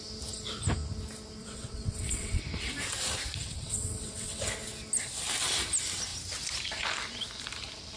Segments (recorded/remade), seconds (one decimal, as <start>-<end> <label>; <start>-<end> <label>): 0.0-1.4 recorded; 1.4-2.4 remade; 2.4-3.4 recorded; 3.4-4.4 remade; 4.4-8.0 recorded